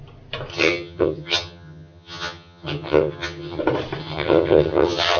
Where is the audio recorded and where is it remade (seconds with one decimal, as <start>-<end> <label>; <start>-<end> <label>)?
0.0-0.5 recorded; 0.5-3.6 remade; 3.6-4.0 recorded; 4.0-5.2 remade